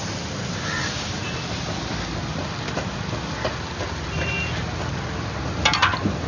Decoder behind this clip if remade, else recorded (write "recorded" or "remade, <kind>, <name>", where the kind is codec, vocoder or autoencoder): recorded